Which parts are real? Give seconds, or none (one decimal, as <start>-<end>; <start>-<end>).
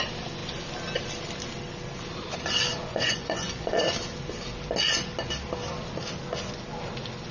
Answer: 0.0-2.9; 3.8-7.3